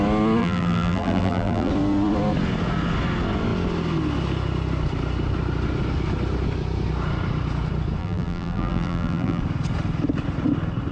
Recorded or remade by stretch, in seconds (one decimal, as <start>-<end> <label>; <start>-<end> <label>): 0.0-0.4 recorded; 0.4-1.7 remade; 1.7-8.0 recorded; 8.0-9.4 remade; 9.4-10.9 recorded